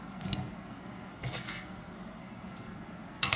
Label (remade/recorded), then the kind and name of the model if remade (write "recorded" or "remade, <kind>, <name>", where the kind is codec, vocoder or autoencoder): remade, codec, SNAC